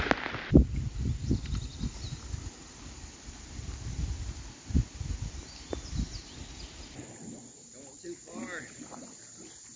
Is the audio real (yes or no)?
yes